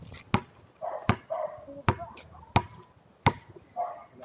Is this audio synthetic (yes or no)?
no